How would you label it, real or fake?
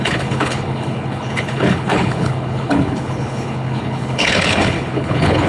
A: fake